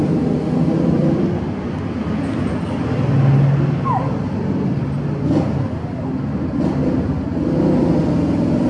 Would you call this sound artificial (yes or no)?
no